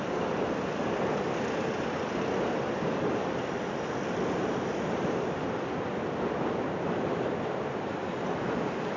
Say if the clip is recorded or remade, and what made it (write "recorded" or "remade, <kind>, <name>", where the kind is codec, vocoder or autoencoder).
remade, vocoder, BigVGAN v2